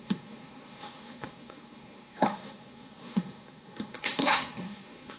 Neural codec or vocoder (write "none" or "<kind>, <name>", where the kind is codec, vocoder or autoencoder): codec, SNAC